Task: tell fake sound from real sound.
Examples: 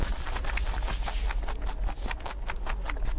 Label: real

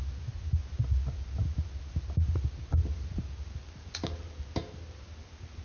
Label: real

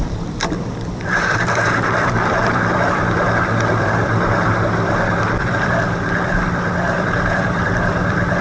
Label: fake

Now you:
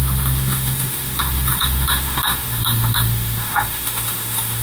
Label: fake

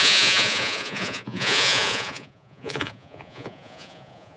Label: fake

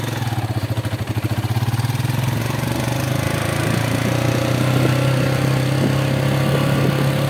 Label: real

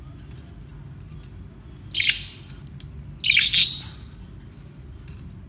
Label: real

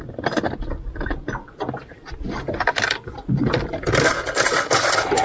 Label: real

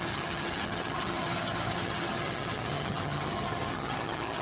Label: fake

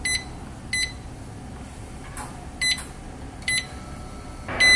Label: real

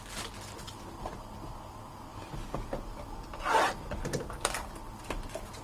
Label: real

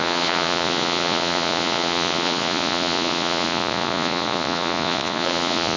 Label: fake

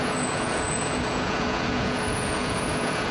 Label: fake